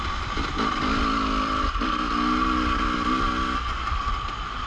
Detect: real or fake real